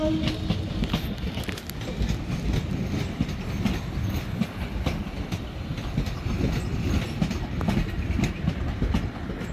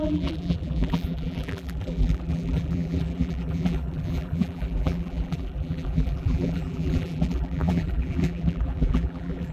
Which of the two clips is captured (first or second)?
first